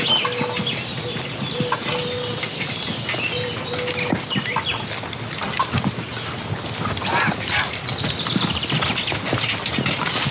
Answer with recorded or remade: recorded